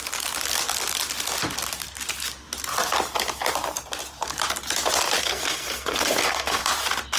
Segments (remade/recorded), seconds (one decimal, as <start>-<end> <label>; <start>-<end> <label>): 0.0-5.2 recorded; 5.2-6.6 remade; 6.6-7.2 recorded